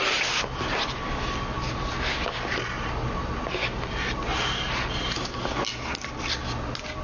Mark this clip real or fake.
real